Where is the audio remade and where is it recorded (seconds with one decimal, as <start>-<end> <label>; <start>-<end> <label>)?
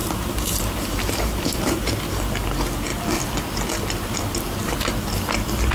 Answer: 0.0-2.3 remade; 2.3-5.7 recorded